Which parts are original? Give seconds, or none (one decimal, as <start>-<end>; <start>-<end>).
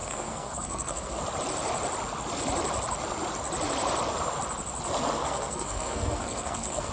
1.2-5.2